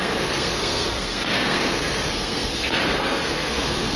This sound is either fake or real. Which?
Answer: fake